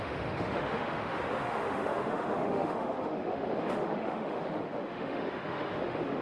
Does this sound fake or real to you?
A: fake